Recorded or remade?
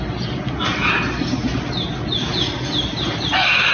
recorded